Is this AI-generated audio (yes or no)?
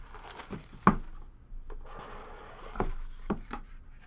no